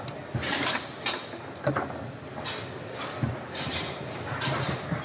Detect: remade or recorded recorded